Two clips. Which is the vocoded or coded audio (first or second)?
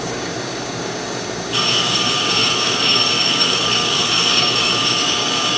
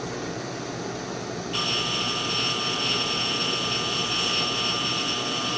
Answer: first